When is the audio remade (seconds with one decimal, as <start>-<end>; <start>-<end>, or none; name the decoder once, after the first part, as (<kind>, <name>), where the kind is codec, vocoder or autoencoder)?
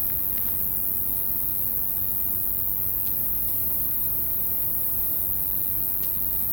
3.2-5.2 (vocoder, Vocos)